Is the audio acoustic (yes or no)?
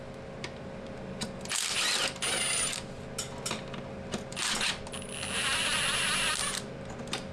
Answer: yes